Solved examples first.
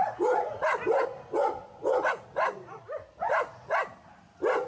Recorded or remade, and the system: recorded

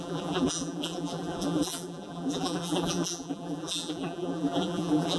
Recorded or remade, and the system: remade, vocoder, BigVGAN v2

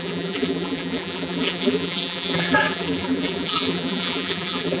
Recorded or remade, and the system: remade, vocoder, BigVGAN v2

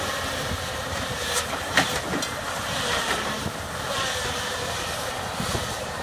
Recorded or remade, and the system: remade, vocoder, BigVGAN v2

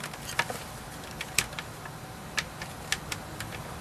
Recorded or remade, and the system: remade, vocoder, BigVGAN v2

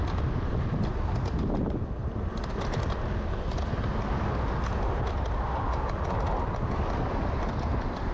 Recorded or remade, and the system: recorded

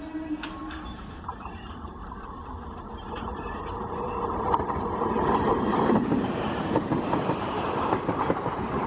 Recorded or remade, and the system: remade, vocoder, BigVGAN v2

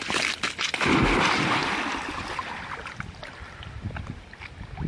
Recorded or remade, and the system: recorded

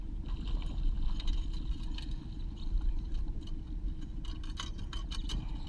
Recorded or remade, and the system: recorded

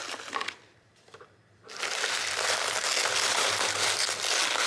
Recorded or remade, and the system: remade, vocoder, BigVGAN v2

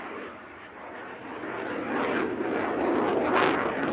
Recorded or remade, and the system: recorded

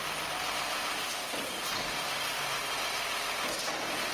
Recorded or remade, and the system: recorded